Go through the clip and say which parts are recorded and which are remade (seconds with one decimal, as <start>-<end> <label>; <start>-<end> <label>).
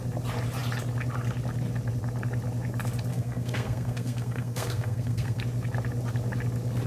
0.0-3.1 recorded; 3.1-5.4 remade; 5.4-6.9 recorded